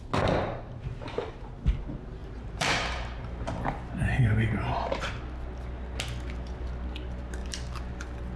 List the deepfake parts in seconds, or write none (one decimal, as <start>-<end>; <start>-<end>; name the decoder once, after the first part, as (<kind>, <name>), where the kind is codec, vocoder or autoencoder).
2.2-5.0 (vocoder, BigVGAN v2); 7.4-7.9